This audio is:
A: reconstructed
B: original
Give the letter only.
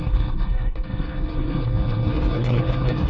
A